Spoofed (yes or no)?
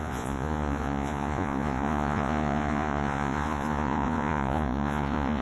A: yes